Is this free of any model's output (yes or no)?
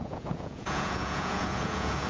no